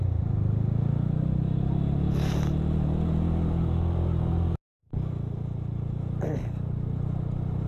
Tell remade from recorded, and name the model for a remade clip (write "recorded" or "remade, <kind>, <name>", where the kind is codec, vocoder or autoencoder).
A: recorded